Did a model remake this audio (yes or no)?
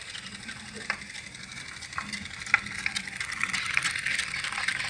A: no